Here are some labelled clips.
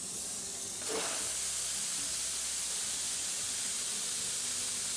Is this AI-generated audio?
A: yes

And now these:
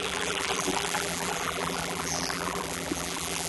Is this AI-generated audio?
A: yes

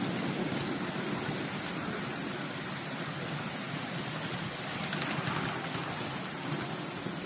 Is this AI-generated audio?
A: no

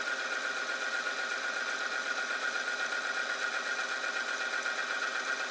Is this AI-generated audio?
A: no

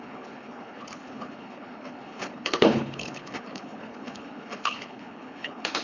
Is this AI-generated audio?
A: yes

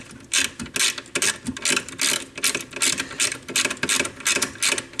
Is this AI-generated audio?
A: no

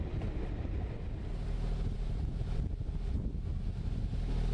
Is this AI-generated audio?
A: no